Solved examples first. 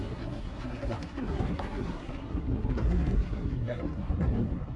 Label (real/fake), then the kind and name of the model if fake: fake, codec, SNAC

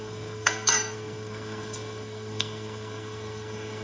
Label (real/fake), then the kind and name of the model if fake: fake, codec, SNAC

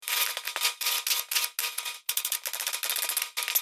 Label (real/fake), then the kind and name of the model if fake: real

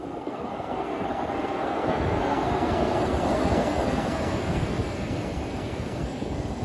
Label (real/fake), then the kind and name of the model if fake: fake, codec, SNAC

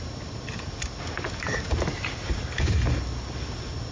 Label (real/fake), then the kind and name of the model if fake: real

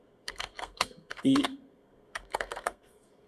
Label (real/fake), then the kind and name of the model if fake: fake, codec, SNAC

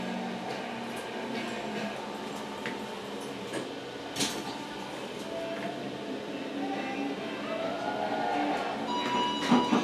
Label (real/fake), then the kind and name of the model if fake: real